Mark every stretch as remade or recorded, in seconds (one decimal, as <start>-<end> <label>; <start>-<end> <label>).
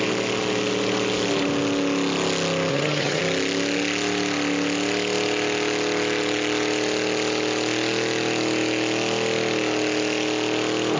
0.0-2.7 recorded; 2.7-3.2 remade; 3.2-11.0 recorded